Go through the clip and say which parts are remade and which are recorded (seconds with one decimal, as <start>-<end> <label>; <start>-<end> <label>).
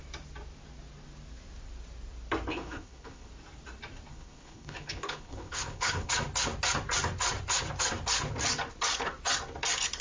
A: 0.0-2.5 recorded; 2.5-3.3 remade; 3.3-4.1 recorded; 4.1-6.1 remade; 6.1-10.0 recorded